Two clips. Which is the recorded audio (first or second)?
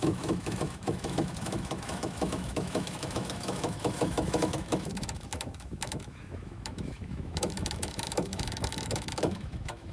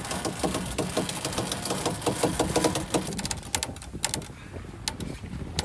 second